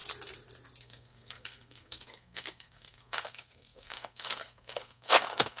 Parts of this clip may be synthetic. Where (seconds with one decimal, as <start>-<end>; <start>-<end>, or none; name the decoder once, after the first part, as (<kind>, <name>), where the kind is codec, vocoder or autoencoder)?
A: 0.8-5.6 (codec, SNAC)